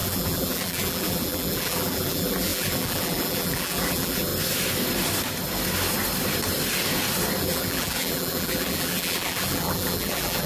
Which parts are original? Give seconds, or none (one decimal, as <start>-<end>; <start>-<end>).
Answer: 4.3-7.4